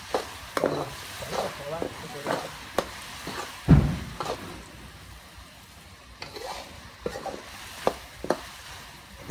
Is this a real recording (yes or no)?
yes